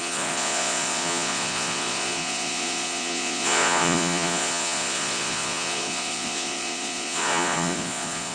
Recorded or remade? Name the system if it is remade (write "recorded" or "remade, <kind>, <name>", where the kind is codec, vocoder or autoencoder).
remade, vocoder, Vocos